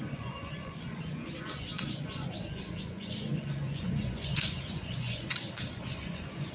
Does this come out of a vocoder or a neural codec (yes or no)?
yes